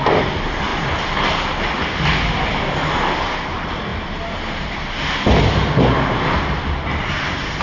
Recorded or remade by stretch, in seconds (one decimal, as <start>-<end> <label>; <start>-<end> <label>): 0.0-7.6 recorded

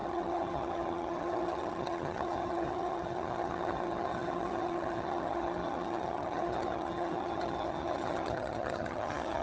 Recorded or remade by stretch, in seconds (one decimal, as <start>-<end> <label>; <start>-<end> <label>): 0.0-9.4 remade